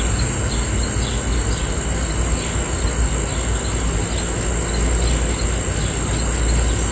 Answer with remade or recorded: recorded